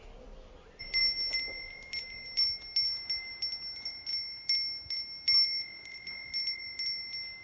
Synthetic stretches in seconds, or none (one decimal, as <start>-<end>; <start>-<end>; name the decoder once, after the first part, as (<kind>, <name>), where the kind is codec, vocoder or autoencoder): none